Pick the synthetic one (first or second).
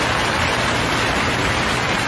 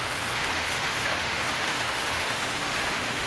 second